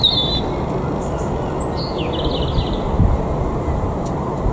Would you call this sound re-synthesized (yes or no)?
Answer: no